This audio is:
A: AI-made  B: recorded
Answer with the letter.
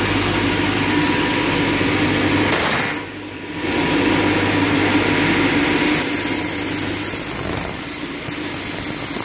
B